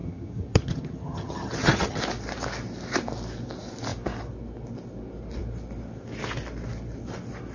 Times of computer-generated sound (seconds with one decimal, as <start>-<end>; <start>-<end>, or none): 0.0-2.0